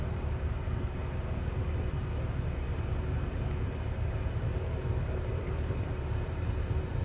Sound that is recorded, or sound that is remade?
remade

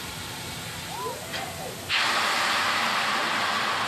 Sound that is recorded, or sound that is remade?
recorded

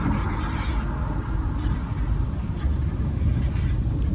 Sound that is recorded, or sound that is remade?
recorded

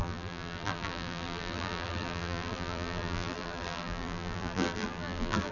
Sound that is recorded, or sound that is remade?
remade